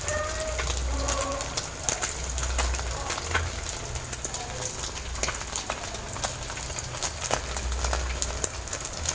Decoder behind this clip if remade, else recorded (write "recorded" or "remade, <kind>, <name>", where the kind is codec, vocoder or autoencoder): recorded